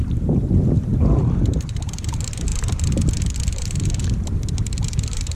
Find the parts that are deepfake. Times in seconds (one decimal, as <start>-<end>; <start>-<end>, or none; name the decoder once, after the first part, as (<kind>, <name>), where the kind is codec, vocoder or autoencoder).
0.0-0.9 (vocoder, BigVGAN v2); 1.5-2.5; 3.5-5.3